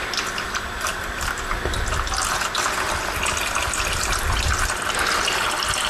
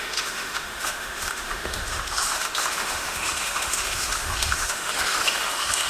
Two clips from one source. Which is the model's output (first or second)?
second